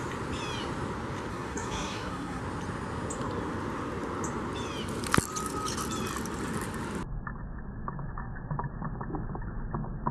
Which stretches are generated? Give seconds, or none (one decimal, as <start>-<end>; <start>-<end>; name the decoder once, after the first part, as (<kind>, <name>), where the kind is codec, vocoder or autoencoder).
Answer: 1.3-2.4 (codec, SNAC)